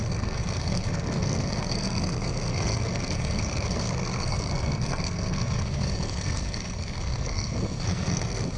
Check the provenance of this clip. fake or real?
fake